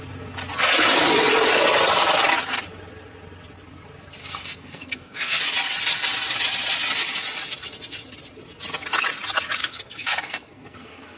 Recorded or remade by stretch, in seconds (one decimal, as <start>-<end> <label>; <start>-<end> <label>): 0.0-4.2 recorded; 4.2-5.4 remade; 5.4-9.6 recorded; 9.6-11.2 remade